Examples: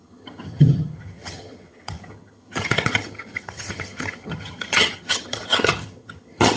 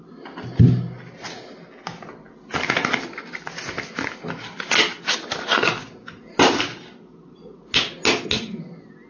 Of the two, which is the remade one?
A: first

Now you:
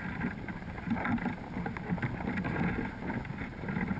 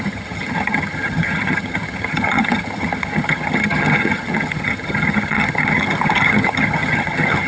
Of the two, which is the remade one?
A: second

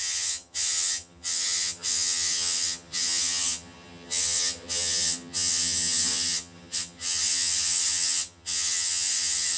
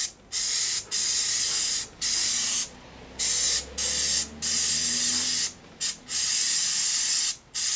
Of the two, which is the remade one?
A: first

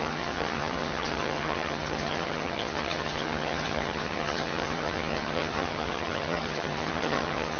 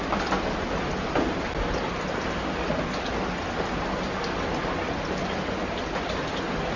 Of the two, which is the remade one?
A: first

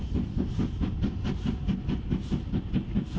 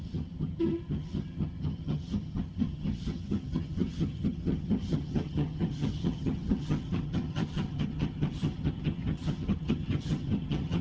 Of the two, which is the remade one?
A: second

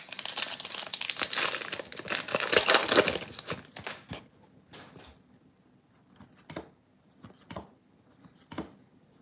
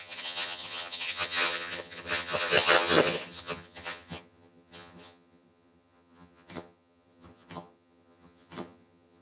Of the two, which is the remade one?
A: second